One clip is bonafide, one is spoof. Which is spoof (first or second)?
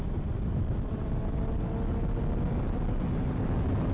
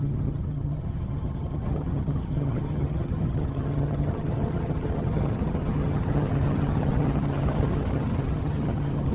second